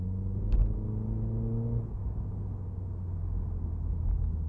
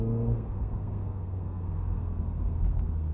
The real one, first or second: first